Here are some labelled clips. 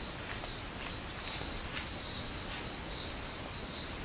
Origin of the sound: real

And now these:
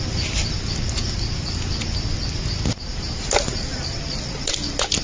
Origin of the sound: real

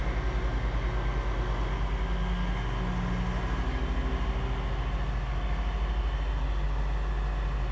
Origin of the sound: real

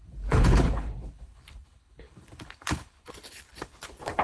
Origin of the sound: fake